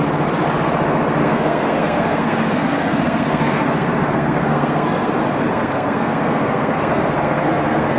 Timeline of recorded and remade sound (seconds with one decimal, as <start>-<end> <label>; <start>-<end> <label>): 0.0-1.2 recorded; 1.2-5.1 remade; 5.1-5.5 recorded; 5.5-8.0 remade